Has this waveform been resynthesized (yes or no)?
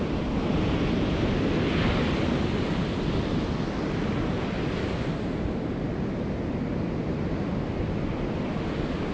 no